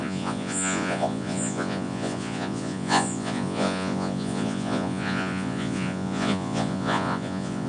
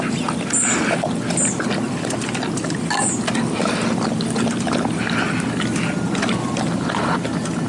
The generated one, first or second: first